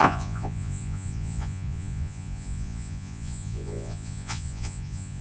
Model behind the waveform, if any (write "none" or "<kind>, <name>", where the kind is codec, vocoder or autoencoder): vocoder, Vocos